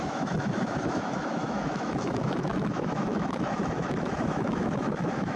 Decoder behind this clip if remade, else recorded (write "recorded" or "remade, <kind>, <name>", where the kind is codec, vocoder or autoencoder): remade, autoencoder, DAC-VAE